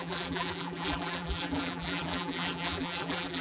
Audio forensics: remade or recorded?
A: remade